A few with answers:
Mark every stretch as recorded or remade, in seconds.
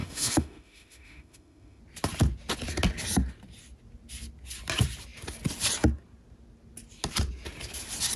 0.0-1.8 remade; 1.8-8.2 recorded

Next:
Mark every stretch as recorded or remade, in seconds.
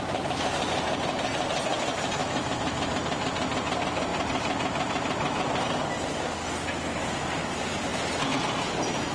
0.0-2.2 recorded; 2.2-2.9 remade; 2.9-9.1 recorded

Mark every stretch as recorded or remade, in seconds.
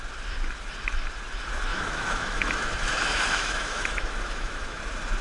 0.0-1.7 recorded; 1.7-4.8 remade; 4.8-5.2 recorded